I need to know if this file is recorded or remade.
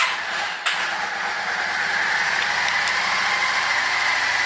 recorded